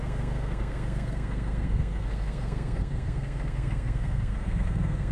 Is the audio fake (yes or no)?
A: yes